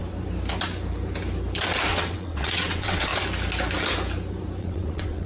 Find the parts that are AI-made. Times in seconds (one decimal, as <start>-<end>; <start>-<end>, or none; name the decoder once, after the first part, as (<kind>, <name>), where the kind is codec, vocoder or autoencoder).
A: 1.9-3.1 (vocoder, WaveNeXt); 4.6-5.3